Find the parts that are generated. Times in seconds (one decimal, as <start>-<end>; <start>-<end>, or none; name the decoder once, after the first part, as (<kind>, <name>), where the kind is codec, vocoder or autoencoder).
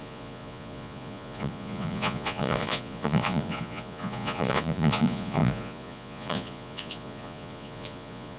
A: 0.0-8.4 (vocoder, Vocos)